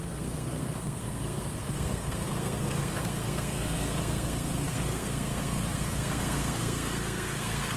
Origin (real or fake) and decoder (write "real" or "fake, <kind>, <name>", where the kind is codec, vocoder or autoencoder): fake, codec, SNAC